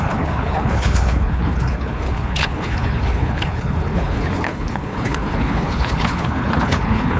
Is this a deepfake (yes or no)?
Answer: yes